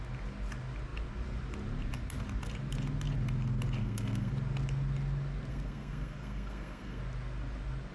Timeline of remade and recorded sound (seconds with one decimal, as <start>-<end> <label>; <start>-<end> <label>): 0.0-3.8 recorded; 3.8-4.3 remade; 4.3-5.5 recorded; 5.5-7.0 remade; 7.0-7.9 recorded